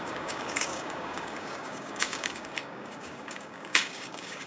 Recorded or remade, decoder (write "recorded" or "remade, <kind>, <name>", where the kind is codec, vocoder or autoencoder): remade, codec, DAC